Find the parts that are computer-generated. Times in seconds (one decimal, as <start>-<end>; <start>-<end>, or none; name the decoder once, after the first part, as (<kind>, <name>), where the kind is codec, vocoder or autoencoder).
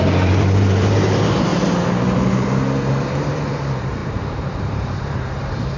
0.0-1.5 (vocoder, BigVGAN v2); 2.3-5.8